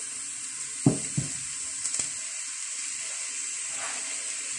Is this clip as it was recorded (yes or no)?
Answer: yes